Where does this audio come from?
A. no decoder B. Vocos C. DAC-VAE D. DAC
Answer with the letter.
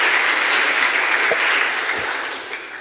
A